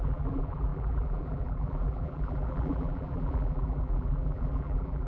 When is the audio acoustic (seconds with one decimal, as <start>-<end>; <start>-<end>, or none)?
none